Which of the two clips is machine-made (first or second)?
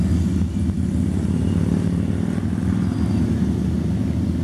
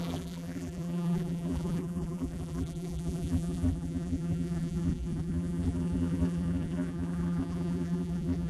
second